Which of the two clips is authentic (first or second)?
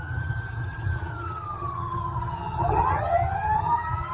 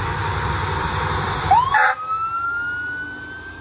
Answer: second